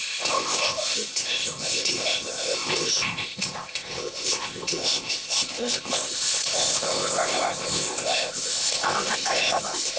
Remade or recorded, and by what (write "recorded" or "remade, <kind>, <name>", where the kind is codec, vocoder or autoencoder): remade, codec, ZipCodec